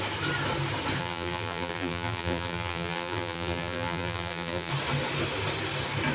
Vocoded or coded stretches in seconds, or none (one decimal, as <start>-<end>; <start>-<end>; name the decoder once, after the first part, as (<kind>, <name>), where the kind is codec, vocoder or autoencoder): 1.0-4.7 (vocoder, BigVGAN v2)